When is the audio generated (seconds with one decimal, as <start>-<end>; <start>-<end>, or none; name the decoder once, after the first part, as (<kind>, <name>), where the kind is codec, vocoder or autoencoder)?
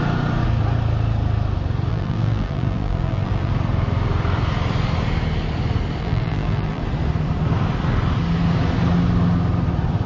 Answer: 1.9-3.5 (vocoder, BigVGAN v2); 6.0-6.8